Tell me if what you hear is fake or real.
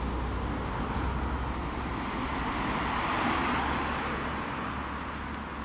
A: real